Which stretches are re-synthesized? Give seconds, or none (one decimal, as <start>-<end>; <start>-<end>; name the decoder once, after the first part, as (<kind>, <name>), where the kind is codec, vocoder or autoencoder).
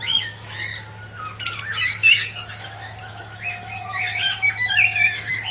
0.0-0.7 (autoencoder, DAC-VAE); 1.6-5.5